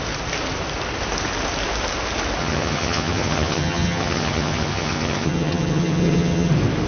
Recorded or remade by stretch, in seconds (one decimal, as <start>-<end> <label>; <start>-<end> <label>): 0.0-2.4 recorded; 2.4-6.5 remade; 6.5-6.9 recorded